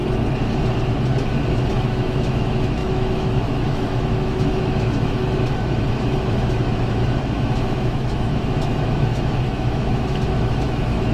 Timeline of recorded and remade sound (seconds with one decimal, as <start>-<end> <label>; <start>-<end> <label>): 0.0-1.5 recorded; 1.5-11.1 remade